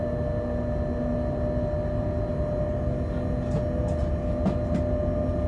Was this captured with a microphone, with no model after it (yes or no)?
yes